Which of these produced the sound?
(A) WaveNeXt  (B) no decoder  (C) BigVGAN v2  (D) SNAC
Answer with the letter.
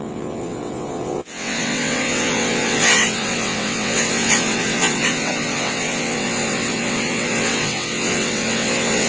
A